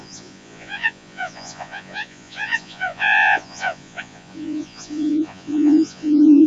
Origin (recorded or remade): remade